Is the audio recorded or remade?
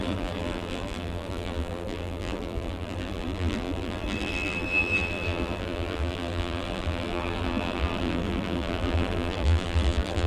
remade